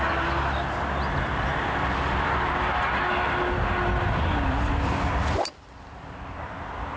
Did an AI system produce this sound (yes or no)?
no